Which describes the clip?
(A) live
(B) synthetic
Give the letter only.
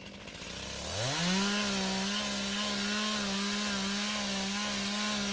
A